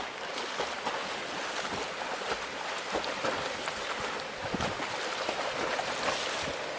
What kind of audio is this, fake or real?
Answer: real